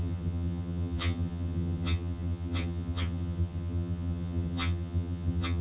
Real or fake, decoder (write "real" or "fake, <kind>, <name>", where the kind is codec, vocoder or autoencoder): fake, vocoder, HiFi-GAN